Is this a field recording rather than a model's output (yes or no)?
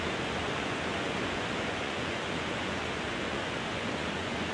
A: no